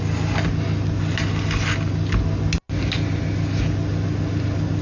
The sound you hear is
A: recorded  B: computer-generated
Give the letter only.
A